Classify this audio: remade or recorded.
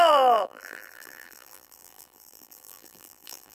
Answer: remade